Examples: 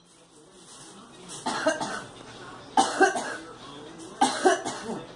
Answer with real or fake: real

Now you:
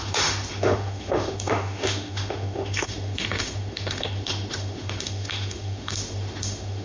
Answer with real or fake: fake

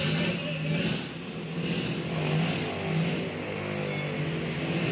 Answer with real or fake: real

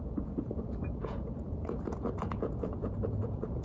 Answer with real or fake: fake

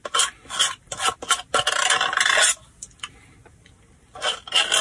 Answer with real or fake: real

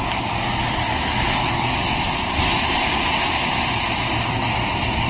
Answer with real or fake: real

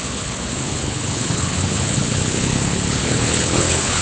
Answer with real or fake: fake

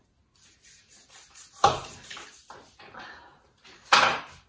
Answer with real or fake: real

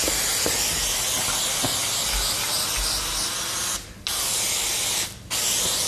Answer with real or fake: real